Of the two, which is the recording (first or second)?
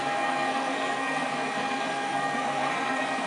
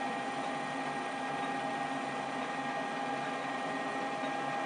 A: second